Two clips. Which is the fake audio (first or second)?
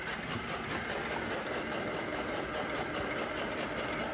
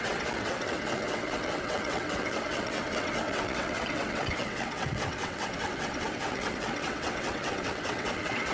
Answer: second